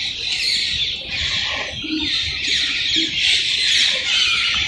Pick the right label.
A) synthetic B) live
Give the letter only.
B